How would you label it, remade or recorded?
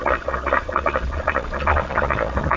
remade